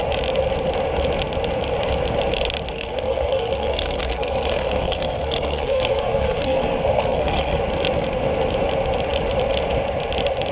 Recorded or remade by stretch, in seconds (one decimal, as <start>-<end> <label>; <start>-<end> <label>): 0.0-2.7 recorded; 2.7-7.6 remade; 7.6-10.5 recorded